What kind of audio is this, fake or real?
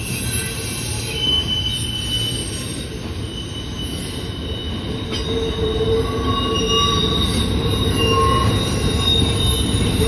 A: real